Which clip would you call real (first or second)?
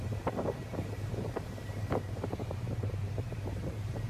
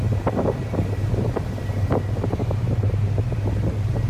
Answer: second